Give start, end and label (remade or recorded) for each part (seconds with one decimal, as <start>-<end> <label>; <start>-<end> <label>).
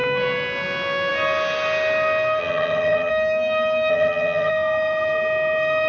0.0-2.4 recorded; 2.4-3.1 remade; 3.1-3.9 recorded; 3.9-4.5 remade; 4.5-5.9 recorded